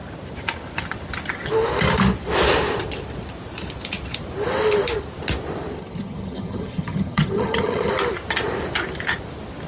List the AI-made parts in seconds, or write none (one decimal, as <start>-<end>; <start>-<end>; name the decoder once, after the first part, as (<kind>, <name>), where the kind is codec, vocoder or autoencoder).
5.8-7.9 (vocoder, HiFi-GAN)